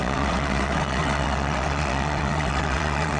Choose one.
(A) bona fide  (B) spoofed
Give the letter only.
B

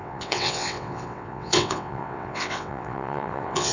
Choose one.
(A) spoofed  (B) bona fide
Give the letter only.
A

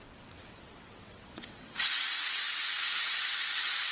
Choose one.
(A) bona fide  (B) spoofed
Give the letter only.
B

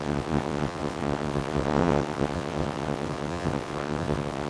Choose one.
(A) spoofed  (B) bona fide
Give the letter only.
A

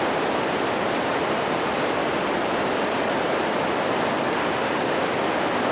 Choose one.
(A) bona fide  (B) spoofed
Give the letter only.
A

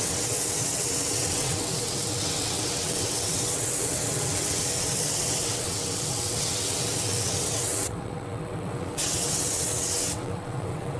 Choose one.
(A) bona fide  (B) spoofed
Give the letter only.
B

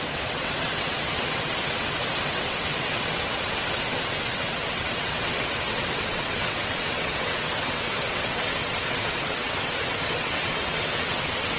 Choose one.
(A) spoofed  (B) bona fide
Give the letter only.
A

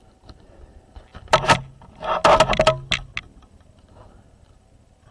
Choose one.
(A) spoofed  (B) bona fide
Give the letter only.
B